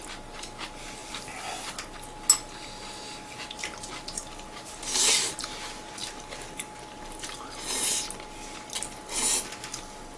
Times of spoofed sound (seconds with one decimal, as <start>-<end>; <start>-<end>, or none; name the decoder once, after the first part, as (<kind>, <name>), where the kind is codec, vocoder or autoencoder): none